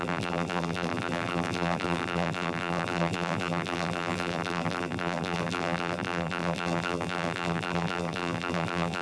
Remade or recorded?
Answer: remade